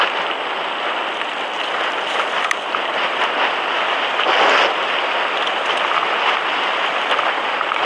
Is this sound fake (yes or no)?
no